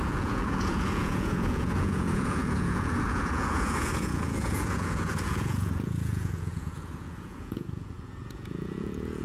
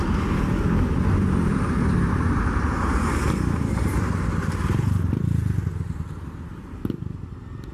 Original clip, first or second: second